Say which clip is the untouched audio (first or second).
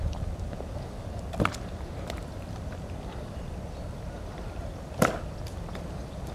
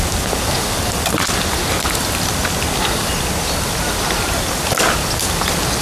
second